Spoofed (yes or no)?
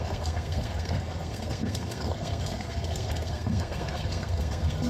yes